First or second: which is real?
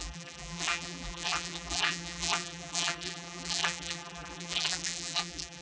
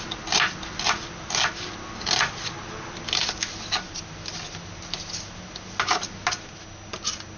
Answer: second